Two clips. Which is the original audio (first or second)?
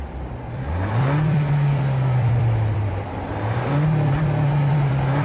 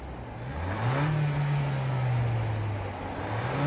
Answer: second